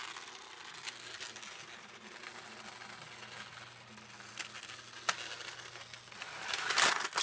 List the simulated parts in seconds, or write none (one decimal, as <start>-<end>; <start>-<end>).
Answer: none